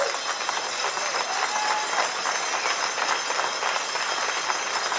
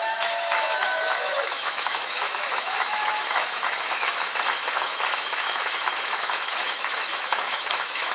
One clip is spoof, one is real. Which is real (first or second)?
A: first